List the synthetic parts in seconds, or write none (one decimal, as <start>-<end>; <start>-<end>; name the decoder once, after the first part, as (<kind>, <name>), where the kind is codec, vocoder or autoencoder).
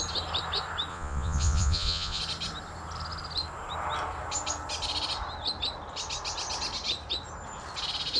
0.9-2.2 (vocoder, Vocos)